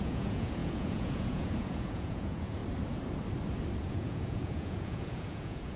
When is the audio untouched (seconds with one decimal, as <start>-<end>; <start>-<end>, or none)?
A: 2.6-3.8